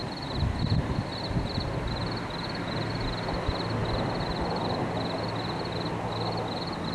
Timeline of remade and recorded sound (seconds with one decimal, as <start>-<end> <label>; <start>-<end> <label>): 0.0-6.9 recorded